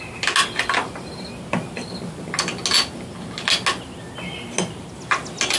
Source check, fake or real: real